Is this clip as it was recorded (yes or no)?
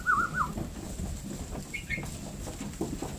yes